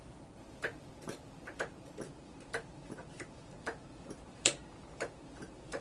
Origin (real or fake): fake